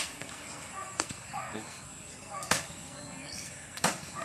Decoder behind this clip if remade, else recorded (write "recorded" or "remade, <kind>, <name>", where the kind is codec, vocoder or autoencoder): remade, codec, SNAC